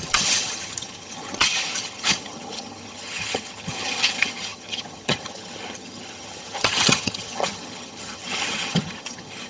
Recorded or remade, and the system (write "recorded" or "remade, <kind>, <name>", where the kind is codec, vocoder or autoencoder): remade, vocoder, HiFi-GAN